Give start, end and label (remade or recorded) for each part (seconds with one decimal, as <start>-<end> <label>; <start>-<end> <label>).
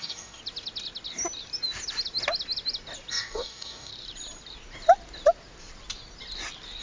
0.0-0.4 remade; 0.4-3.1 recorded; 3.1-3.9 remade; 3.9-6.8 recorded